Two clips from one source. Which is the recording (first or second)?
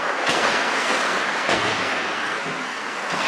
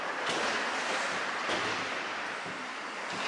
second